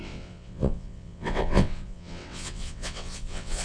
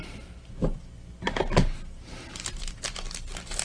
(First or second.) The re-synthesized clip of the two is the first